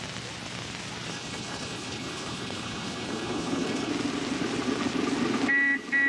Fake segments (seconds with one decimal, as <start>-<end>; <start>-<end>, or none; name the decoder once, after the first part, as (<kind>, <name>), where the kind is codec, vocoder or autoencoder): 1.1-3.9 (codec, HILCodec)